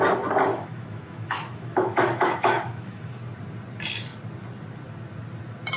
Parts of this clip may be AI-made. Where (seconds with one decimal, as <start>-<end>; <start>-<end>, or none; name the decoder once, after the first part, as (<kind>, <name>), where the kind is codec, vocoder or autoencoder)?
0.5-3.1 (autoencoder, DAC-VAE)